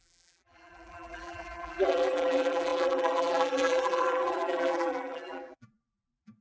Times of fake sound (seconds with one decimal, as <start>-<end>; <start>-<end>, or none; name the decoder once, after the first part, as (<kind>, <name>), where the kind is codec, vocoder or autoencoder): 0.0-6.4 (vocoder, BigVGAN v2)